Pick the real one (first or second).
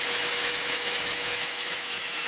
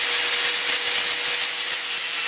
second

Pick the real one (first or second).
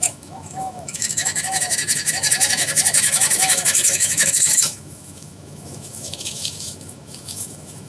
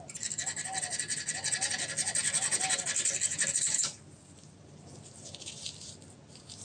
second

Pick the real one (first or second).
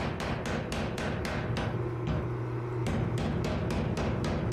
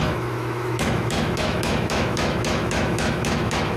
first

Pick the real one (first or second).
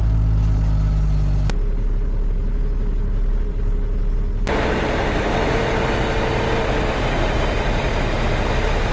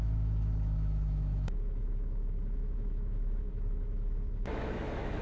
first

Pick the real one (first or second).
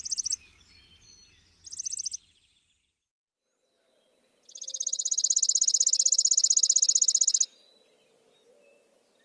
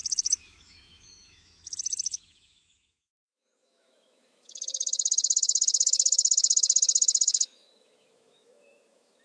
first